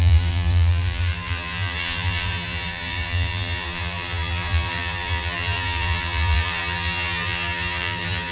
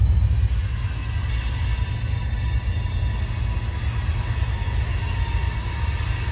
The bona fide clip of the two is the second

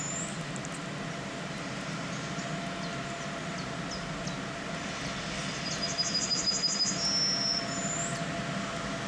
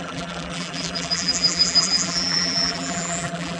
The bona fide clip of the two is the first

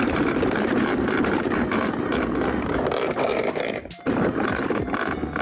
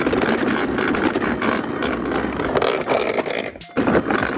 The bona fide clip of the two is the second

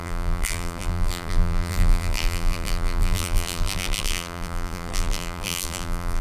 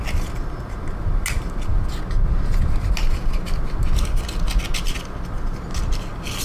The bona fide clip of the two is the second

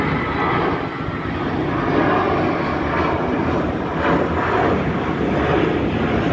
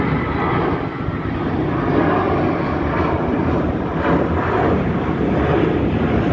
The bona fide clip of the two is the first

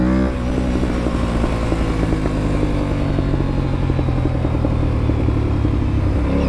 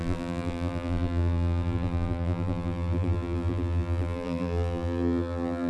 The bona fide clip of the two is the first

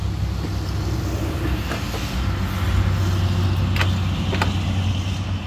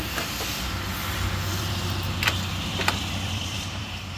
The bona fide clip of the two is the first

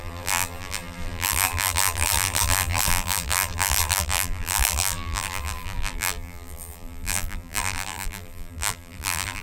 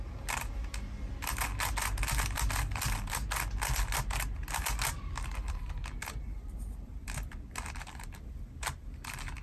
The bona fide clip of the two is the second